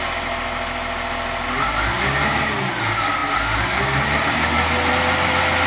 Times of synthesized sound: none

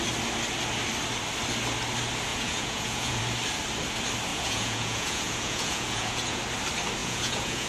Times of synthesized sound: 2.3-3.2 (vocoder, Vocos); 4.3-6.4; 7.0-7.7

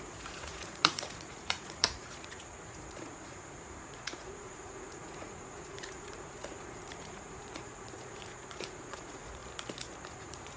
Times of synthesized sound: 0.0-9.4 (vocoder, Vocos); 10.1-10.6